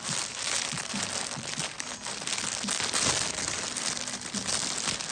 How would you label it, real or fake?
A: real